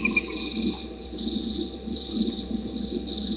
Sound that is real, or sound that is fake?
fake